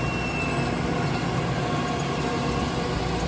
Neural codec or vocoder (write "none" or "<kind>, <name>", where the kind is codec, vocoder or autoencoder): none